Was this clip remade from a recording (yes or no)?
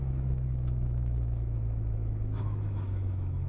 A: yes